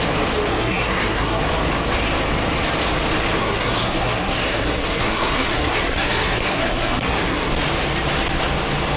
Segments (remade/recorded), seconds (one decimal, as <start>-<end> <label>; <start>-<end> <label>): 0.0-0.5 recorded; 0.5-1.4 remade; 1.4-3.4 recorded; 3.4-7.5 remade; 7.5-9.0 recorded

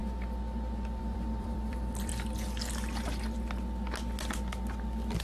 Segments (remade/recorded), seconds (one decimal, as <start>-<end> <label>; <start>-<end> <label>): 0.0-1.0 recorded; 1.0-2.1 remade; 2.1-5.2 recorded

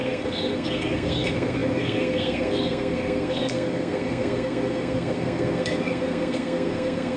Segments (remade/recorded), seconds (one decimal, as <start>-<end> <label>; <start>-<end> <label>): 0.0-7.2 remade

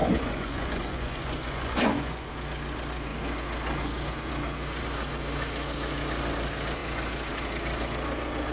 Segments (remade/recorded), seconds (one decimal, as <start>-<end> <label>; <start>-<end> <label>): 0.0-2.3 remade; 2.3-8.5 recorded